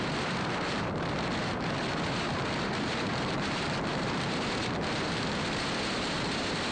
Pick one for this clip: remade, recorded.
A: remade